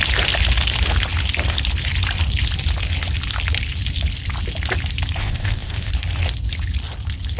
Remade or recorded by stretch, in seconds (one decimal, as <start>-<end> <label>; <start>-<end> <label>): 0.0-5.2 recorded; 5.2-5.9 remade; 5.9-7.4 recorded